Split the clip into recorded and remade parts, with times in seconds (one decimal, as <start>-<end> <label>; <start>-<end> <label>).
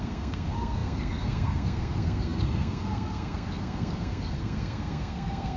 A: 0.0-5.6 remade